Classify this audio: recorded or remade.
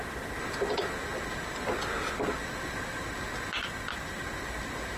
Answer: recorded